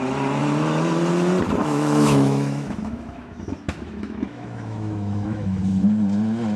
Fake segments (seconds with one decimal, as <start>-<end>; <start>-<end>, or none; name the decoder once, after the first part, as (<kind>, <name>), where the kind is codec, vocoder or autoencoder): 1.6-5.6 (autoencoder, DAC-VAE)